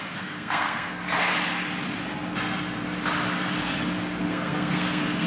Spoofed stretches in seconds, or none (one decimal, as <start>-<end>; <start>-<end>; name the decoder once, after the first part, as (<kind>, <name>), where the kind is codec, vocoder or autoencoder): 0.0-1.0 (codec, SNAC); 4.2-5.3